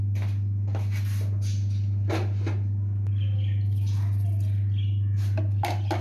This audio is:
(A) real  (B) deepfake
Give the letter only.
A